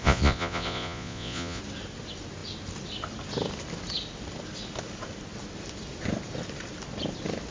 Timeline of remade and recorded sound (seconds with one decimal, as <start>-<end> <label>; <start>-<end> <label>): 0.0-1.6 remade; 1.6-7.5 recorded